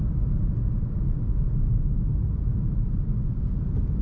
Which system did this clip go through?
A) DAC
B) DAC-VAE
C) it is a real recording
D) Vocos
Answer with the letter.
C